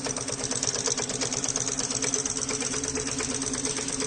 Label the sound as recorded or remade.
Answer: recorded